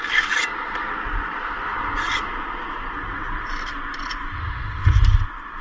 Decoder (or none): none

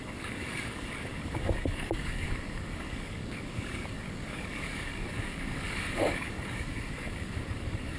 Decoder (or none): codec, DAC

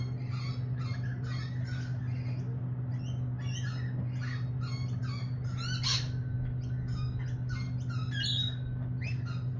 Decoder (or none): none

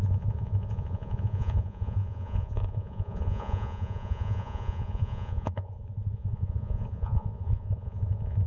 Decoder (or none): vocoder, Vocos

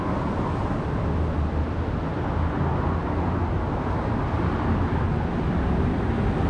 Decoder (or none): none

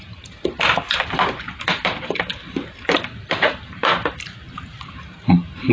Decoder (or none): vocoder, BigVGAN v2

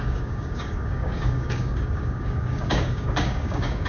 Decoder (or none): codec, DAC